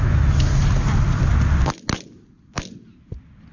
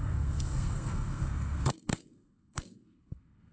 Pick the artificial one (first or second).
second